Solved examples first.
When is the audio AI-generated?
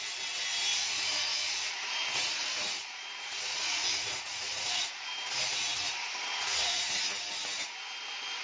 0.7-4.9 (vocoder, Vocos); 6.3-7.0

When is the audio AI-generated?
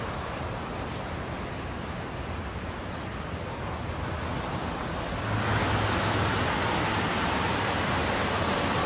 none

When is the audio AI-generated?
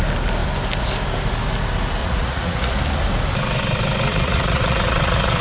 2.0-2.8 (vocoder, Vocos); 4.1-5.4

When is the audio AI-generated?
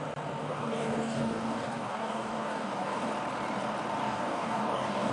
0.4-3.0 (codec, DAC); 4.0-5.1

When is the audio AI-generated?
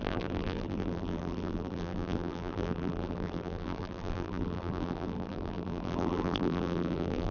0.0-7.3 (vocoder, BigVGAN v2)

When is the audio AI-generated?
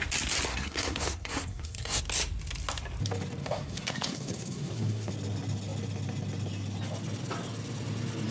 0.5-2.0 (codec, SNAC); 3.4-5.1